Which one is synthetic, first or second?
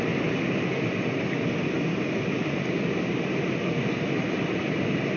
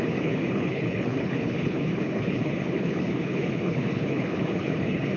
second